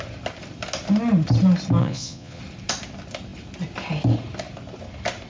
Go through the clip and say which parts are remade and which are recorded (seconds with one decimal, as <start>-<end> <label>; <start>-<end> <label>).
0.0-1.8 recorded; 1.8-2.4 remade; 2.4-5.3 recorded